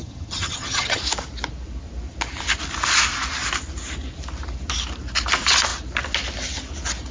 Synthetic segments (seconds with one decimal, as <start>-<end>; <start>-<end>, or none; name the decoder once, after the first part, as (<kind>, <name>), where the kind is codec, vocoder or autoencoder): 0.0-1.0 (vocoder, HiFi-GAN)

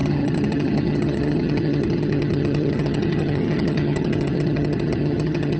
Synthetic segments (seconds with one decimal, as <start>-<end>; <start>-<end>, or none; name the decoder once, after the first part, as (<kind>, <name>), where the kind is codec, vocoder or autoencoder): 0.0-5.6 (vocoder, HiFi-GAN)